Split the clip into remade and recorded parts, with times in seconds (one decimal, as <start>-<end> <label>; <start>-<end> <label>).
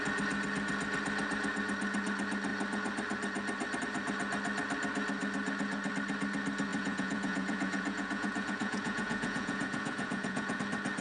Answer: 0.0-6.7 recorded; 6.7-10.6 remade; 10.6-11.0 recorded